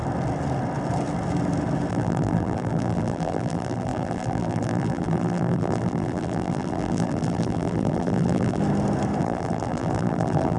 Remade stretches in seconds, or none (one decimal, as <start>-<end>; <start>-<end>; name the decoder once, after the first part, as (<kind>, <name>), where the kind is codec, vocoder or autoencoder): 1.9-8.6 (vocoder, BigVGAN v2); 9.2-10.6